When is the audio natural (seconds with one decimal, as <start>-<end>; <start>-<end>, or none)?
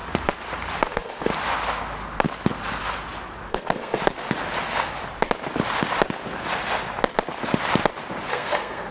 0.0-0.9; 1.3-3.5; 4.0-8.3